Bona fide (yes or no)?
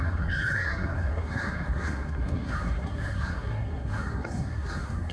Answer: no